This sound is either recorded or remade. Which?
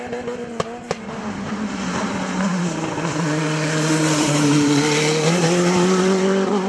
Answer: recorded